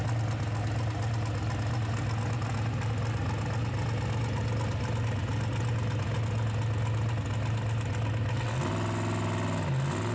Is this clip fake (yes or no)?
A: no